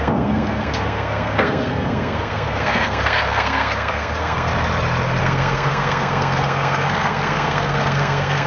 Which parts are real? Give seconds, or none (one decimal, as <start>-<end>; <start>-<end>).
4.5-5.2